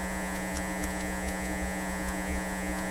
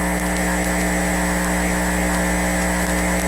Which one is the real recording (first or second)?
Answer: second